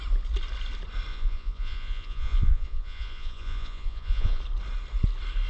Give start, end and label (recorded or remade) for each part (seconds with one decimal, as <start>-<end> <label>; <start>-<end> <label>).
0.0-1.1 recorded; 1.1-4.4 remade; 4.4-5.5 recorded